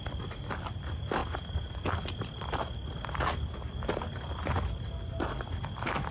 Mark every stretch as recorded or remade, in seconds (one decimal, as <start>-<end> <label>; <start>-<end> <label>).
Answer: 0.0-6.1 recorded